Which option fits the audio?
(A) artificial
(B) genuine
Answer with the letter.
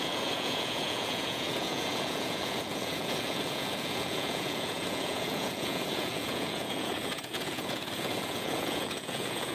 A